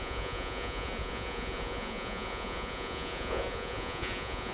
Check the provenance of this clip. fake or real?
fake